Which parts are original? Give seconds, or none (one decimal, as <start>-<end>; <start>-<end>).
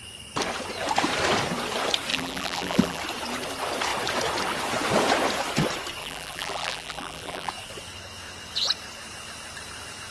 0.0-2.1; 3.0-6.0; 7.5-10.1